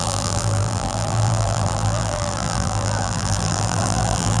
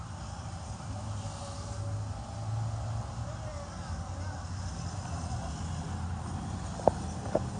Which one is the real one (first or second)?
second